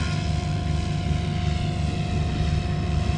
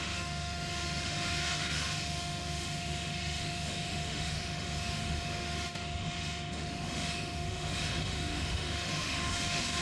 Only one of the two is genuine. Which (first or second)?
first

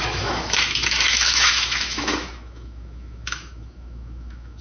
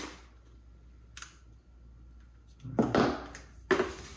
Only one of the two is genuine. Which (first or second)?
second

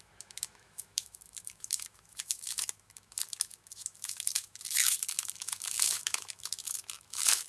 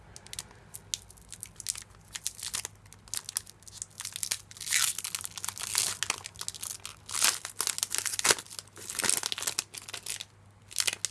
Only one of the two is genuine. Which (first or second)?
second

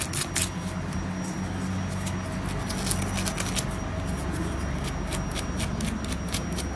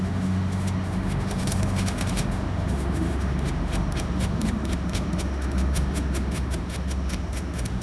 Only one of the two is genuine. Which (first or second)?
first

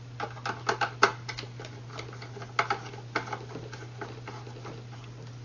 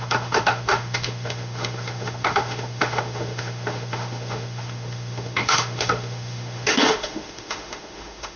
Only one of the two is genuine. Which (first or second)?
first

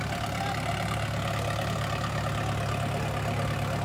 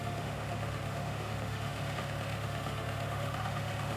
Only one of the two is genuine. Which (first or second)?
first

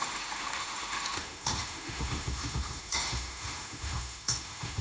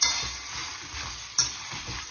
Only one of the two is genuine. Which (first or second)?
second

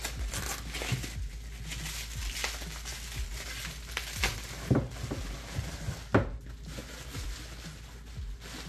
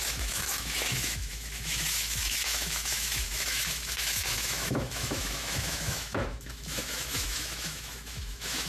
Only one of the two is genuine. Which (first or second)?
first